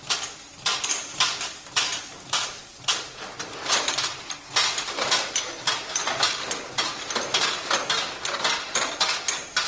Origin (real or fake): fake